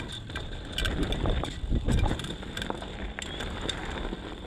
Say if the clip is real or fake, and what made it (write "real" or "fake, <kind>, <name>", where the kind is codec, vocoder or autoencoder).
real